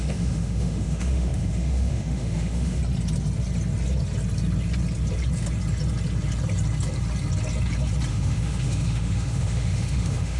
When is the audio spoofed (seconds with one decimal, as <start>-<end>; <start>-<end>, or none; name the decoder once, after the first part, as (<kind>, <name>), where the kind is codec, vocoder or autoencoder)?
0.0-2.8 (autoencoder, DAC-VAE); 8.1-10.4